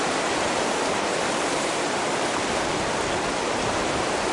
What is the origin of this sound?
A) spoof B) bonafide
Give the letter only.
B